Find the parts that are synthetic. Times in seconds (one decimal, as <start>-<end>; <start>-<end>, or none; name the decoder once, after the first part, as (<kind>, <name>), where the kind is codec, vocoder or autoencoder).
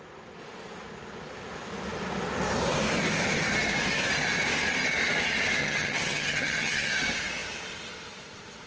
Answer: 5.6-6.9 (vocoder, HiFi-GAN)